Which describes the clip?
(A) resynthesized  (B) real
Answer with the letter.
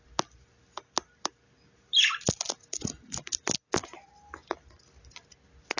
B